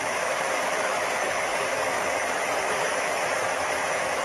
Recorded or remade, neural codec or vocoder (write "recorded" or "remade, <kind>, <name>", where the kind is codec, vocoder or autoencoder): remade, autoencoder, DAC-VAE